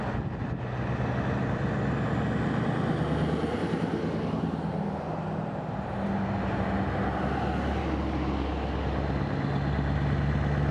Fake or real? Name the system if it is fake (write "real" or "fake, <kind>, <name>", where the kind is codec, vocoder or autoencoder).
real